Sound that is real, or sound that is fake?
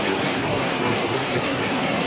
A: fake